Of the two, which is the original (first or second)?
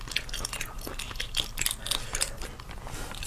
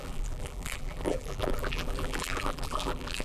first